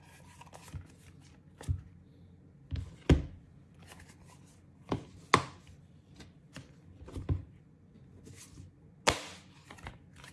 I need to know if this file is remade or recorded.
recorded